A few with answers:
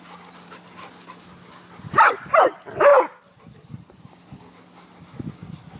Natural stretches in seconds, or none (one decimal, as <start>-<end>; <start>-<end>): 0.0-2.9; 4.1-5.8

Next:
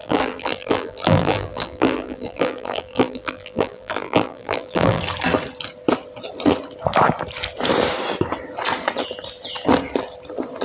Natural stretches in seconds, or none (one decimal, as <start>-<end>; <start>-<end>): 5.0-10.6

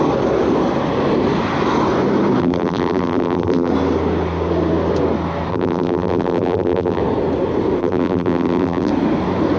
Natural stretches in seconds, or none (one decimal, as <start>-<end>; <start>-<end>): 0.0-2.4; 3.7-5.5; 7.0-7.8; 8.9-9.6

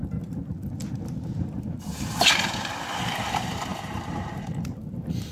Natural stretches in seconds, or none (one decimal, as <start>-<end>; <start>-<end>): 0.0-3.2